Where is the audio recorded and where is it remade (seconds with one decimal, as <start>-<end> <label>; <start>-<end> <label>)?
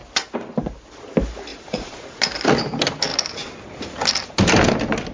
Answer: 0.0-1.5 recorded; 1.5-2.2 remade; 2.2-5.1 recorded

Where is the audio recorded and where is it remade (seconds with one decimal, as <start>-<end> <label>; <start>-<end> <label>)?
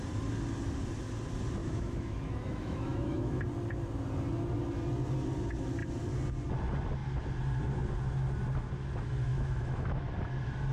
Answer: 0.0-1.6 recorded; 1.6-3.4 remade; 3.4-9.3 recorded; 9.3-10.1 remade; 10.1-10.7 recorded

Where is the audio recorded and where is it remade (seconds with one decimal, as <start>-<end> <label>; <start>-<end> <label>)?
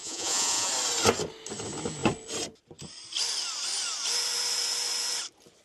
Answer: 0.0-0.7 remade; 0.7-5.6 recorded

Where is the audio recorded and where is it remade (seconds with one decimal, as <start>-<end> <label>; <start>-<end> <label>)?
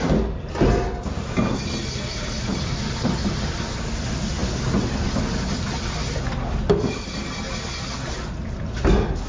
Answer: 0.0-2.5 recorded; 2.5-3.9 remade; 3.9-9.3 recorded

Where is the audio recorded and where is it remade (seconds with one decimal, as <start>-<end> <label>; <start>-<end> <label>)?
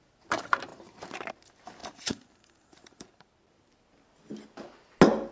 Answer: 0.0-0.7 recorded; 0.7-1.3 remade; 1.3-1.8 recorded; 1.8-3.3 remade; 3.3-5.3 recorded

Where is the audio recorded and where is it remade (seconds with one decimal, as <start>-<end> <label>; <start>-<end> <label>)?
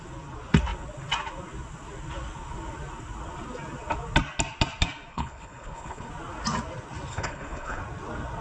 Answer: 0.0-5.1 recorded; 5.1-6.1 remade; 6.1-7.1 recorded; 7.1-7.8 remade; 7.8-8.4 recorded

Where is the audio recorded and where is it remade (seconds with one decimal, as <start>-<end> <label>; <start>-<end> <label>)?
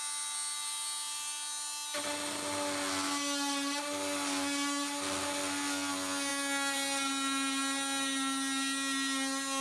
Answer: 0.0-9.6 recorded